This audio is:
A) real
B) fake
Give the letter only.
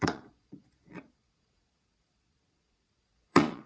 B